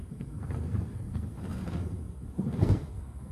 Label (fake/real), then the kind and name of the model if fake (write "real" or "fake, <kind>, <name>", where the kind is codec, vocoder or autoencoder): fake, codec, SNAC